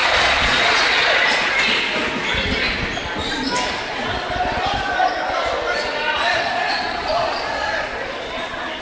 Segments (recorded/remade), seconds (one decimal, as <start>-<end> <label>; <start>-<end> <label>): 0.0-1.9 remade; 1.9-6.1 recorded; 6.1-8.8 remade